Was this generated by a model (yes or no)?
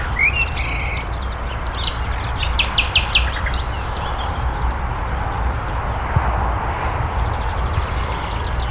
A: no